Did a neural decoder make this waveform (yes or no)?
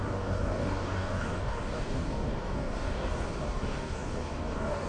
yes